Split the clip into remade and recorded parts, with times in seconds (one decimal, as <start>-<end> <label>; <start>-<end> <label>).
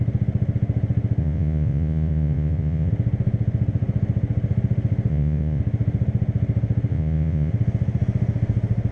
0.0-1.2 recorded; 1.2-2.9 remade; 2.9-5.1 recorded; 5.1-5.6 remade; 5.6-6.9 recorded; 6.9-7.5 remade; 7.5-8.9 recorded